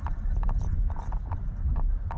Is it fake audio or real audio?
fake